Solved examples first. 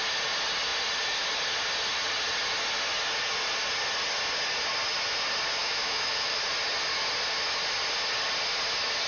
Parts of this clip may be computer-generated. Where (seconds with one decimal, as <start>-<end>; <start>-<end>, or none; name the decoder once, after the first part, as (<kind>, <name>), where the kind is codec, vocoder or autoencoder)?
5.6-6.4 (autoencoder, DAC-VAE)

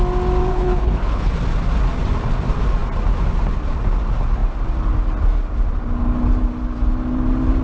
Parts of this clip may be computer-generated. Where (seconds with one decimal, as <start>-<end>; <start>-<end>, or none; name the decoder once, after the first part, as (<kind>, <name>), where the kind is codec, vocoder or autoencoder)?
0.5-1.3 (codec, HILCodec)

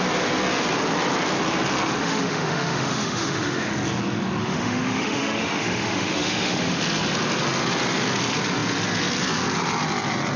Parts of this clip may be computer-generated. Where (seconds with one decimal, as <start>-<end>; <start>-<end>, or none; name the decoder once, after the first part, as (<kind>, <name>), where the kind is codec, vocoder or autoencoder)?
2.0-3.7 (autoencoder, DAC-VAE); 4.4-6.8

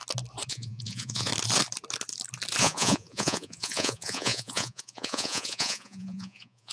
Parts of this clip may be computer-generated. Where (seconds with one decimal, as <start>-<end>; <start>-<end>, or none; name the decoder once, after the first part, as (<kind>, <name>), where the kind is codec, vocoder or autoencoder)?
0.5-1.3 (vocoder, Vocos); 2.6-6.7

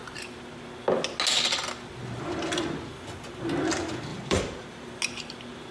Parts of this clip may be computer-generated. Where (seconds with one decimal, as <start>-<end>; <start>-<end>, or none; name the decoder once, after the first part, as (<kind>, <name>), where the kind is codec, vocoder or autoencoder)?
4.1-4.9 (vocoder, BigVGAN v2)